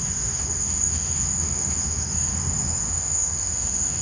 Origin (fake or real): fake